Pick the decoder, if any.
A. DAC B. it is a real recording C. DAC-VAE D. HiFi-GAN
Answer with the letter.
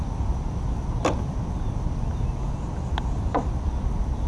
B